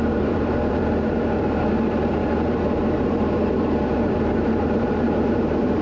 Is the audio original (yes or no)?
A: no